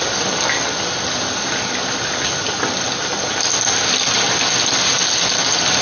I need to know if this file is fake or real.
real